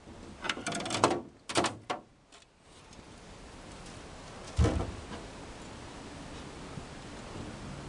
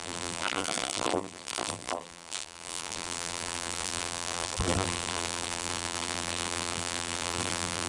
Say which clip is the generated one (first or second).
second